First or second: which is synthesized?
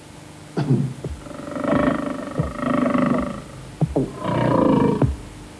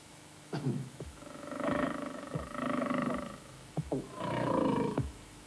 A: second